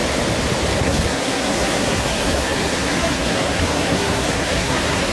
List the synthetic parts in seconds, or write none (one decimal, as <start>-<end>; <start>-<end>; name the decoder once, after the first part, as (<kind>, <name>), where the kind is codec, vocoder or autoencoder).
0.8-5.1 (codec, SNAC)

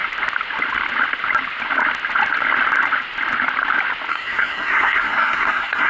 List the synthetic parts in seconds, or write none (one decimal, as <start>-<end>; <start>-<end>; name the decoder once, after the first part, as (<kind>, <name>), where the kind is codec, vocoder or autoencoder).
4.1-5.9 (codec, SNAC)

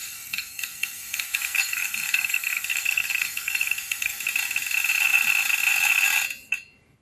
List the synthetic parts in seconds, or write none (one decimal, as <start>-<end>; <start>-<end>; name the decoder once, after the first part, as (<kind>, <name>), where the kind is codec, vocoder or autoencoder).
0.0-4.2 (codec, SNAC)